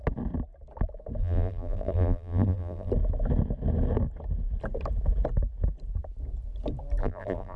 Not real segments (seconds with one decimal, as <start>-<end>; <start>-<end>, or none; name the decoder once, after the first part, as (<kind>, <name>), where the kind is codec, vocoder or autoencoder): 1.2-2.9 (vocoder, BigVGAN v2); 7.0-7.6